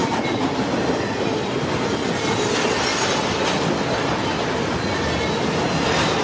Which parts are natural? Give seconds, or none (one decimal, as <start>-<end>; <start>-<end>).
0.9-6.2